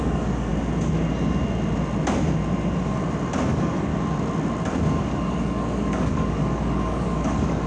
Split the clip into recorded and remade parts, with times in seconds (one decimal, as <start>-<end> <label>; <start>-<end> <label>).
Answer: 0.0-0.5 remade; 0.5-3.5 recorded; 3.5-3.9 remade; 3.9-5.0 recorded; 5.0-7.7 remade